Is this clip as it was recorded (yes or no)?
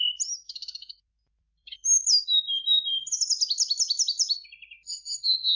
yes